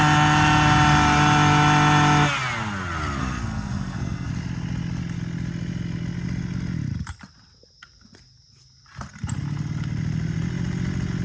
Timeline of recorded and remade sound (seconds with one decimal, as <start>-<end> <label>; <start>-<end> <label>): 0.0-3.2 recorded; 3.2-4.3 remade; 4.3-11.2 recorded